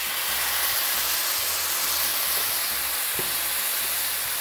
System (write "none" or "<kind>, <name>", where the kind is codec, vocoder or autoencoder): none